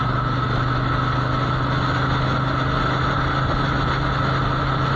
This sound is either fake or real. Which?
real